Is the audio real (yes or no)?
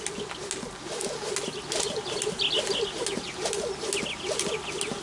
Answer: yes